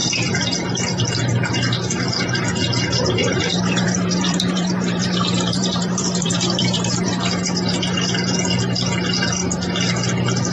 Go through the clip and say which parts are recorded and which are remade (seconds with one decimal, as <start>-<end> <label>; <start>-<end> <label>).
0.0-3.2 recorded; 3.2-7.1 remade; 7.1-10.5 recorded